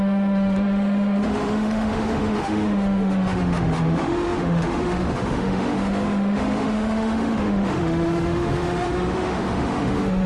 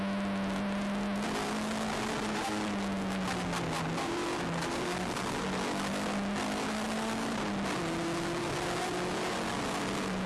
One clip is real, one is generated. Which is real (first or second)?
second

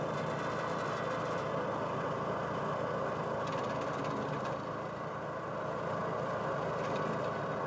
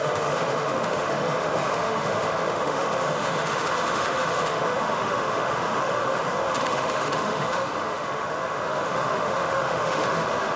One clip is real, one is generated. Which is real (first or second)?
first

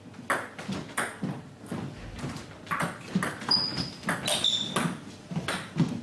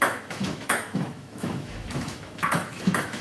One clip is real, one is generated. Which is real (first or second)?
first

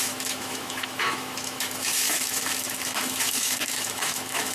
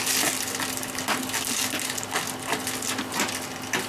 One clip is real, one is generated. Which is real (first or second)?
second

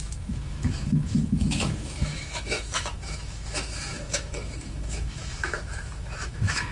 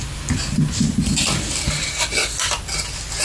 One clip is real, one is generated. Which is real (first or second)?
second